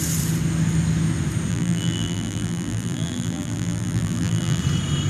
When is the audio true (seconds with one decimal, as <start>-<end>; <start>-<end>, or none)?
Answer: 0.0-1.5; 4.6-5.1